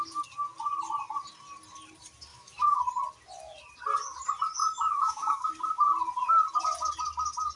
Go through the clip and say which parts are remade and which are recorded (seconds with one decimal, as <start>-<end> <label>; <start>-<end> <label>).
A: 0.0-2.3 recorded; 2.3-2.8 remade; 2.8-4.6 recorded; 4.6-5.5 remade; 5.5-7.6 recorded

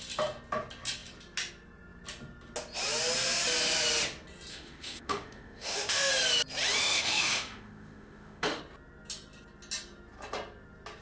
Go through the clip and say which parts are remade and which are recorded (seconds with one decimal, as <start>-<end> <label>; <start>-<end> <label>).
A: 0.0-4.5 recorded; 4.5-6.1 remade; 6.1-6.8 recorded; 6.8-8.6 remade; 8.6-11.0 recorded

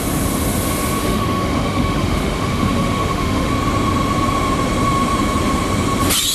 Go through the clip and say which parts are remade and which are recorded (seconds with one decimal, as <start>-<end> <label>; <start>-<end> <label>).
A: 0.0-1.0 recorded; 1.0-3.5 remade; 3.5-6.3 recorded

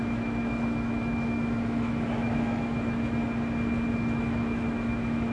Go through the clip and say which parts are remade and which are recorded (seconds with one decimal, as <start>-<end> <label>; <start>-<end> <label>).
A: 0.0-3.2 remade; 3.2-3.9 recorded; 3.9-5.3 remade

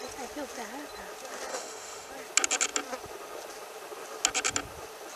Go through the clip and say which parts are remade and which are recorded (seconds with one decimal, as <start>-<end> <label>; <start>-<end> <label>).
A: 0.0-1.5 recorded; 1.5-2.1 remade; 2.1-5.2 recorded

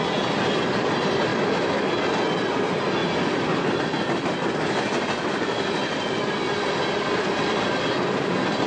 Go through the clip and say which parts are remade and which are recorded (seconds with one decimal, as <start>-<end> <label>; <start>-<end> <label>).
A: 0.0-1.3 recorded; 1.3-1.9 remade; 1.9-8.7 recorded